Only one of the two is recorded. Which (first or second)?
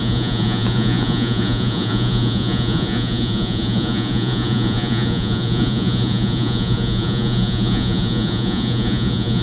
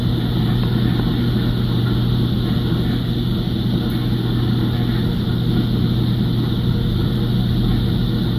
second